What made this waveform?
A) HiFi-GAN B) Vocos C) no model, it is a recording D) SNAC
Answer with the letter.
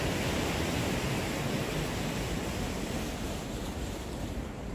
C